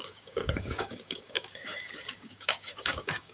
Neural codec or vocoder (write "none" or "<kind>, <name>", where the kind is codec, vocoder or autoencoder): codec, DAC